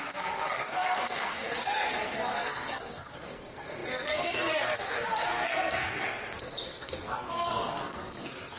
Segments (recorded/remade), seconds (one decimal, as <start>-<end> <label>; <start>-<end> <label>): 0.0-8.6 remade